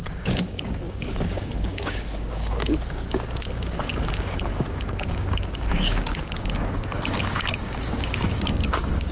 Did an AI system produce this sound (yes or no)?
yes